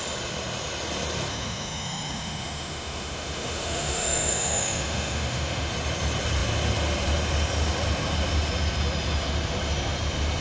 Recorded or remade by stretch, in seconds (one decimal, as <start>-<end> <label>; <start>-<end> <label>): 0.0-1.3 recorded; 1.3-5.7 remade; 5.7-10.4 recorded